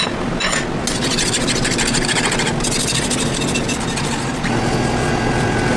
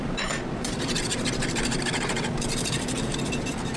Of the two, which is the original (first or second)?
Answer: first